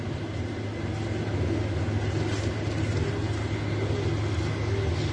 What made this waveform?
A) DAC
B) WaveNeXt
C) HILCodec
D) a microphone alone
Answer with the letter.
D